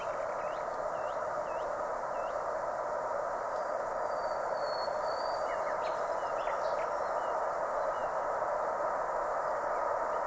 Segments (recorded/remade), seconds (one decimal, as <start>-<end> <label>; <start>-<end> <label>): 0.0-10.3 recorded